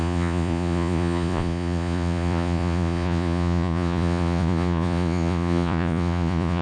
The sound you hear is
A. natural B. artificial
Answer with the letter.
B